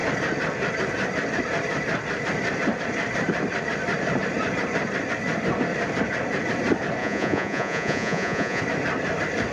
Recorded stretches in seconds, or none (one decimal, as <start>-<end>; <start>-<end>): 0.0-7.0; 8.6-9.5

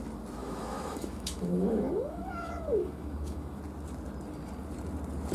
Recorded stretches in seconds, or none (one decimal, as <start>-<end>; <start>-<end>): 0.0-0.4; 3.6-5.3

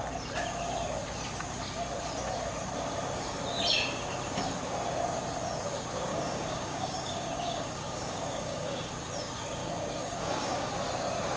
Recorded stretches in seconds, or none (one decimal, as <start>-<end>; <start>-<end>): 0.0-6.1; 8.9-9.6; 10.7-11.4

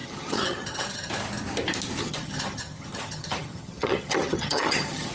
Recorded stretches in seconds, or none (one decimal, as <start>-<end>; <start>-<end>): 1.1-2.0

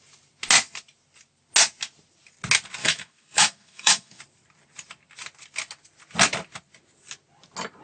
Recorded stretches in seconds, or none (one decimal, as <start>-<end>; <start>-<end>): 0.0-2.8; 4.2-7.8

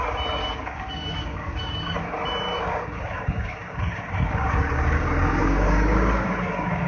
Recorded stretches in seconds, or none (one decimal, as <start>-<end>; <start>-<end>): 0.0-0.4; 2.2-2.6